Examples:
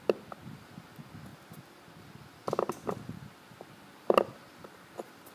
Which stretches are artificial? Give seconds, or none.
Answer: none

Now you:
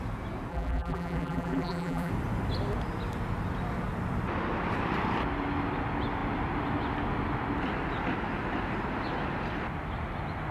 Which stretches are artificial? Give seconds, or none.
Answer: 0.5-2.1

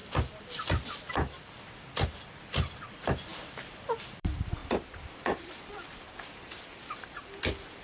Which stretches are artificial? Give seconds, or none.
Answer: 0.0-4.6; 5.5-7.8

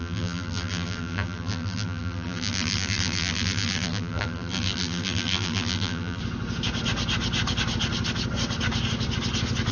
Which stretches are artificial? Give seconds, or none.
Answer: 0.0-6.2

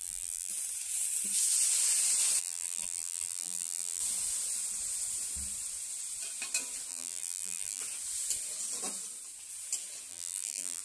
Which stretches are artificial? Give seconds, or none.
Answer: 0.0-0.5; 2.4-4.0; 6.9-7.8; 10.1-10.8

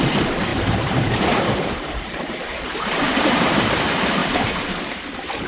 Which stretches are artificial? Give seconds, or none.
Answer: 0.5-3.8; 4.2-4.7

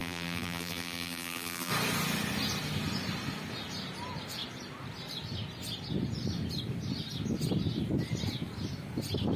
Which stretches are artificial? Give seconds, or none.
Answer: 0.0-1.7